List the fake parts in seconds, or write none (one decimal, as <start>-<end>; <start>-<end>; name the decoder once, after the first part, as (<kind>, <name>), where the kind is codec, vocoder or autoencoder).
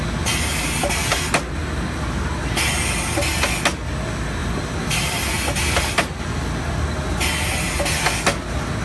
4.4-6.5 (vocoder, BigVGAN v2)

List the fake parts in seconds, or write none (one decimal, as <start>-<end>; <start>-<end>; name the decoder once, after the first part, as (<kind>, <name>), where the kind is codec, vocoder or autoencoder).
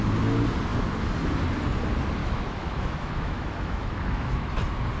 2.2-4.5 (autoencoder, DAC-VAE)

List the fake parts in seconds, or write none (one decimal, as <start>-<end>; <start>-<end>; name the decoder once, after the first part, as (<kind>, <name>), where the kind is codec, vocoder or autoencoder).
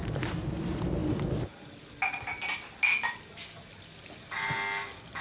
none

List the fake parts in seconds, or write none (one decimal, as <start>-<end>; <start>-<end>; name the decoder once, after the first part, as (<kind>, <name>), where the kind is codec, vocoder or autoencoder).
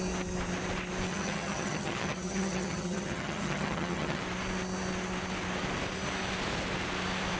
1.1-4.2 (vocoder, HiFi-GAN)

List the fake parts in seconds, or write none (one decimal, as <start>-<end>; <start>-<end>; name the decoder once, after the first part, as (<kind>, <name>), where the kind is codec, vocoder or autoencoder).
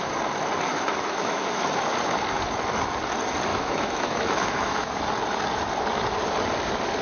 0.7-1.6 (autoencoder, DAC-VAE); 3.5-5.0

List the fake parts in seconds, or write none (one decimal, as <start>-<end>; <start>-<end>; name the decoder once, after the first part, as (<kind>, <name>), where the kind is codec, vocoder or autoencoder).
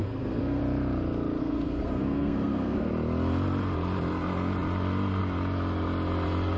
0.0-0.6 (codec, SNAC); 1.4-2.9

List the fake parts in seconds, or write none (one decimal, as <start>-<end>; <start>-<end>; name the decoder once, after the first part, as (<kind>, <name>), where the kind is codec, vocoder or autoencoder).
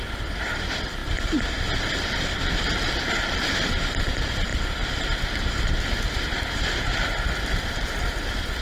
4.5-8.6 (vocoder, BigVGAN v2)